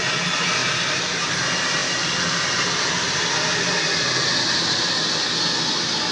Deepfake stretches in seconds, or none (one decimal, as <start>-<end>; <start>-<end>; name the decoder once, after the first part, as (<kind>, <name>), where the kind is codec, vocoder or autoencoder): none